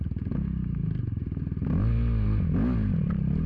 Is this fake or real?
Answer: real